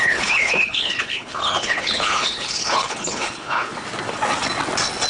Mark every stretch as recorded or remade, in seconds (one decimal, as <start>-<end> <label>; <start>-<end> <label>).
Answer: 0.0-3.7 remade; 3.7-5.1 recorded